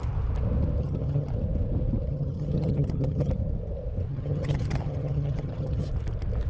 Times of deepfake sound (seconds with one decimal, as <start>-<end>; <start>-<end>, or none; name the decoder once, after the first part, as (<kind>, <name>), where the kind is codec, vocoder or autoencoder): 0.8-1.3 (vocoder, HiFi-GAN); 2.1-3.3; 4.1-5.9